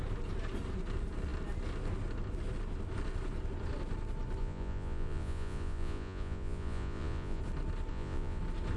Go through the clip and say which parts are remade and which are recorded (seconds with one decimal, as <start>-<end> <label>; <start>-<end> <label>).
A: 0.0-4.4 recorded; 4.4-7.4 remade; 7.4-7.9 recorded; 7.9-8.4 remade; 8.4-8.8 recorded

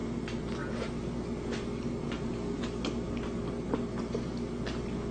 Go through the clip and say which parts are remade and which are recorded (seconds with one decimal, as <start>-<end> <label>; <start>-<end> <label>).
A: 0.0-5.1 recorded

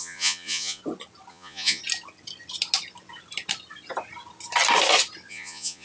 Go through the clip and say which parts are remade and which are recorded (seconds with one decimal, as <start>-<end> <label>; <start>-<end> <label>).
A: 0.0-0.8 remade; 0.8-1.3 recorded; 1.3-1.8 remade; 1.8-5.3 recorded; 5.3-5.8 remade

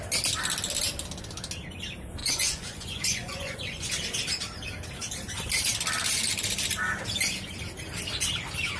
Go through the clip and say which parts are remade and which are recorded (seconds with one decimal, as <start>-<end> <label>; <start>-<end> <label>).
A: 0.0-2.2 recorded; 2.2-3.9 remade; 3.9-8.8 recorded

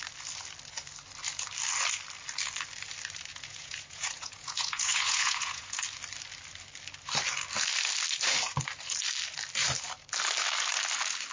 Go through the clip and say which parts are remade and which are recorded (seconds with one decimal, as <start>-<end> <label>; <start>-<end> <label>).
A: 0.0-3.3 recorded; 3.3-5.8 remade; 5.8-11.3 recorded

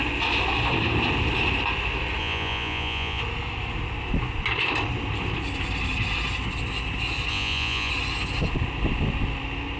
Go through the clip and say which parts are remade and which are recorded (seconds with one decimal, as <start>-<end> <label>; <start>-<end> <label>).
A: 0.0-2.2 recorded; 2.2-3.2 remade; 3.2-7.3 recorded; 7.3-7.9 remade; 7.9-9.8 recorded